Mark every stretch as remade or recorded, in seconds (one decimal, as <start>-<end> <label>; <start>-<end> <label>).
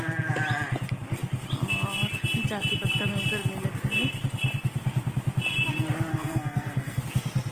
0.0-6.1 recorded; 6.1-7.0 remade; 7.0-7.5 recorded